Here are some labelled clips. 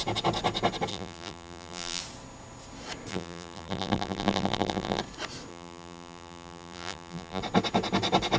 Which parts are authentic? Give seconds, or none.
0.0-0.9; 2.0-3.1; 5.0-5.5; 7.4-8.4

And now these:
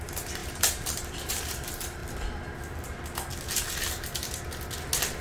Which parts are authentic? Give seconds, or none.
2.0-5.2

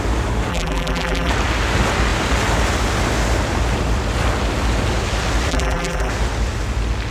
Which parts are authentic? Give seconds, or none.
0.0-0.5; 1.3-5.5; 6.1-7.1

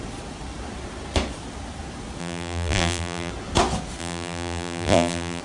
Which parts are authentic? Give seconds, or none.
0.0-2.2; 3.3-4.0

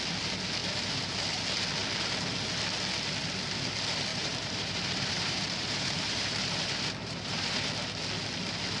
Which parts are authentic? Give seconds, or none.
0.0-0.6; 1.4-4.1; 7.7-8.8

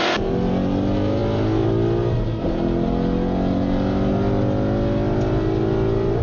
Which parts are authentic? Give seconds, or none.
0.0-6.2

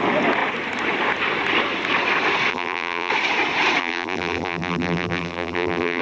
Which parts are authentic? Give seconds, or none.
0.0-2.5; 3.1-3.8

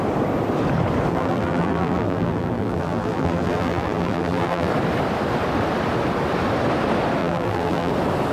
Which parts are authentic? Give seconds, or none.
0.0-1.1; 4.7-7.2; 7.9-8.3